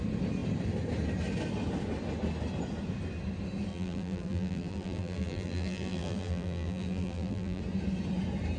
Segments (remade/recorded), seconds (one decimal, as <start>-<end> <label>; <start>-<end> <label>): 0.0-3.7 recorded; 3.7-7.6 remade; 7.6-8.6 recorded